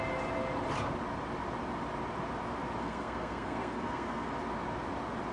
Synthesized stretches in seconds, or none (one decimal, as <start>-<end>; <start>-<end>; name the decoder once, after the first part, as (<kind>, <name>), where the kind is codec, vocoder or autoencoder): 2.8-4.3 (codec, SNAC)